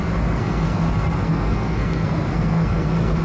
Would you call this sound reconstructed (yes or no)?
yes